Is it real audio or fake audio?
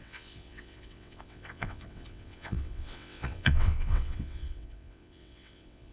fake